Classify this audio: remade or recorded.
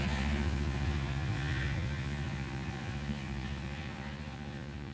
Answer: remade